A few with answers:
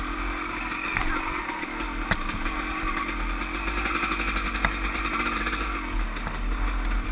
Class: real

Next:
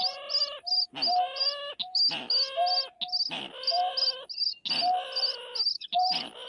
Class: real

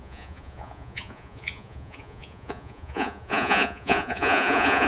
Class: fake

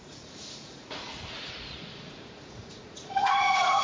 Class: fake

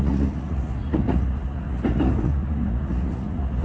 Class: fake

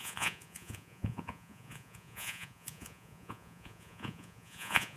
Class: fake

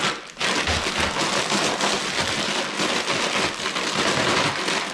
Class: real